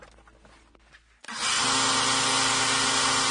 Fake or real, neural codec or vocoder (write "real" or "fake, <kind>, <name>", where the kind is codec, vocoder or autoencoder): real